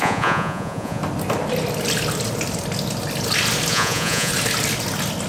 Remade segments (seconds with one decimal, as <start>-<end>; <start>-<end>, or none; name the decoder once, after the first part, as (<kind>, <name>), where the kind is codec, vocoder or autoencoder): 0.0-1.0 (vocoder, Vocos); 3.7-4.3